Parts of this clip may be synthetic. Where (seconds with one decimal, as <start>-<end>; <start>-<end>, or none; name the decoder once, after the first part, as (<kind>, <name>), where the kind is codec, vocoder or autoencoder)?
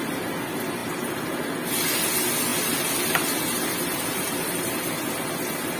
0.8-1.7 (vocoder, BigVGAN v2); 2.5-5.3